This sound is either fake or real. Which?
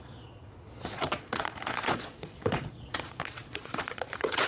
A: fake